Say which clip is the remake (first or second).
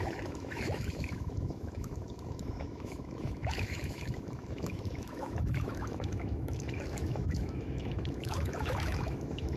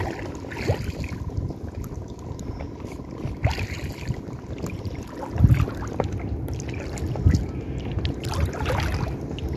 first